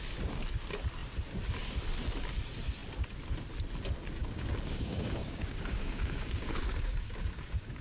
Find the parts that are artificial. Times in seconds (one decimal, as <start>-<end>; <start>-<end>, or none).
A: 4.2-7.8